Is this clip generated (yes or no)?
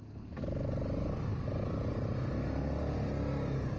no